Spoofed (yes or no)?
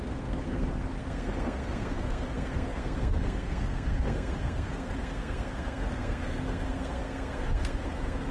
yes